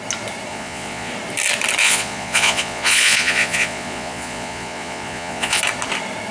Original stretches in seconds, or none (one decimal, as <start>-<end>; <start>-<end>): 0.0-0.5; 1.1-1.8; 5.6-6.3